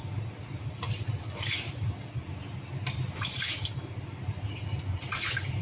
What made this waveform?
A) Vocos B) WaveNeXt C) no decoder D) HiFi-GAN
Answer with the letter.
C